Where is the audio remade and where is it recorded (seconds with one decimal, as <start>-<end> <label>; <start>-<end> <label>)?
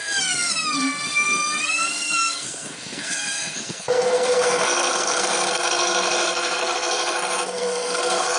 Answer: 0.0-8.4 remade